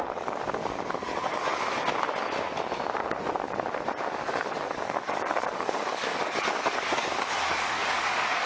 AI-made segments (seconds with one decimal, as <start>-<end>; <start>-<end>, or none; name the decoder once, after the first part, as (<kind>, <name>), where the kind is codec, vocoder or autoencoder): 0.0-1.5 (codec, DAC); 4.3-8.5